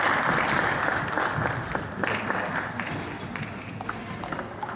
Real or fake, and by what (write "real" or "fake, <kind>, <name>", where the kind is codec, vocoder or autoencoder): real